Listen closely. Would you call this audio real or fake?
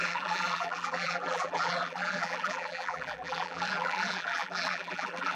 fake